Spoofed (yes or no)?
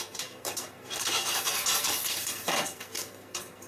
yes